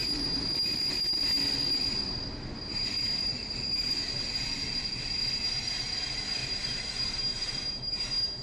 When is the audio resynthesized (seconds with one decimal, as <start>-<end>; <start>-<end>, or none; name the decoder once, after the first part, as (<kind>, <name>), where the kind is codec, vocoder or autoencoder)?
0.0-1.2 (vocoder, BigVGAN v2); 2.6-3.9; 6.4-7.2